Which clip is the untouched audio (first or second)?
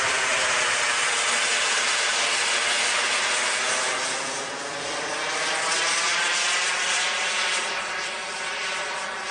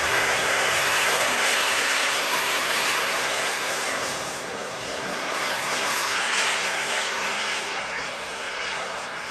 first